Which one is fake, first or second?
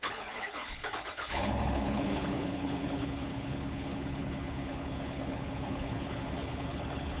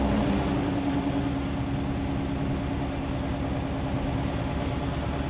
first